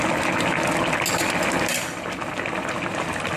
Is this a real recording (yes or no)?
yes